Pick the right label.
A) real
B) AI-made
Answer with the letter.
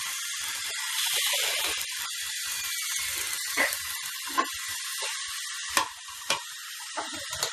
B